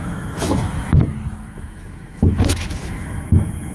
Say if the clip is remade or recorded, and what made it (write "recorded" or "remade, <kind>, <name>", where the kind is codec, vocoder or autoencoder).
remade, autoencoder, DAC-VAE